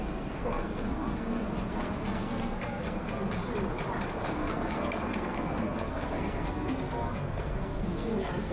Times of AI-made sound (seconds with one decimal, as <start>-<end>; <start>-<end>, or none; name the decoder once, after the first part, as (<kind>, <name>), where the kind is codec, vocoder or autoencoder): 0.0-3.4 (codec, SNAC); 4.3-8.5